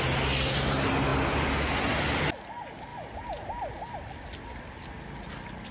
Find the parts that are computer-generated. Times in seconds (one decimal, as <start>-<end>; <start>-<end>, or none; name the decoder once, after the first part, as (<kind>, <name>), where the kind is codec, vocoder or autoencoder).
2.9-4.0 (vocoder, BigVGAN v2)

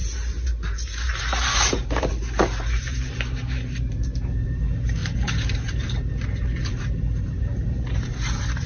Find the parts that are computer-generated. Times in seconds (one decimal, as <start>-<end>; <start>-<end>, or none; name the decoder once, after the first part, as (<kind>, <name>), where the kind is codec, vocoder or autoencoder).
0.0-8.7 (vocoder, BigVGAN v2)

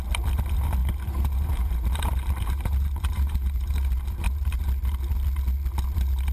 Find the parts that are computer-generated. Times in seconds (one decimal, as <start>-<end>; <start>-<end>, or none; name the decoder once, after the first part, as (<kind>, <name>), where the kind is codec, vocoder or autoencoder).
0.8-4.6 (vocoder, BigVGAN v2)

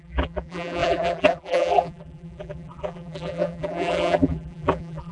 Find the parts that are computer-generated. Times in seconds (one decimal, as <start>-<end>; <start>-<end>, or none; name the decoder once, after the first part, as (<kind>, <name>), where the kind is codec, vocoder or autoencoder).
0.0-5.1 (vocoder, BigVGAN v2)

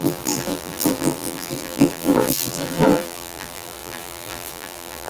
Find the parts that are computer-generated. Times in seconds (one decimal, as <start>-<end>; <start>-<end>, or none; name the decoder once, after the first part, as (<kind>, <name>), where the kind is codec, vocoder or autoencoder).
0.0-5.1 (vocoder, BigVGAN v2)

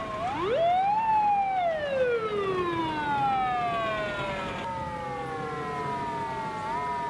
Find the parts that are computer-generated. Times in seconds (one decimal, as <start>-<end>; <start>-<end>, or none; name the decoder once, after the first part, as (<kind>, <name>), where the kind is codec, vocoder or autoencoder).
none

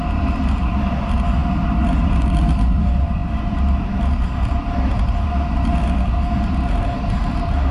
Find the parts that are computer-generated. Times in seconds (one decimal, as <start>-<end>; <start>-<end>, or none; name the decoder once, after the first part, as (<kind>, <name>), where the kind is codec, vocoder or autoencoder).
none

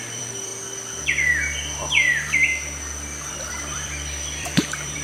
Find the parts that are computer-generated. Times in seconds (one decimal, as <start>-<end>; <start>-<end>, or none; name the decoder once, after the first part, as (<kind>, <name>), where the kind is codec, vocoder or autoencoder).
0.0-0.5 (vocoder, BigVGAN v2); 3.3-5.0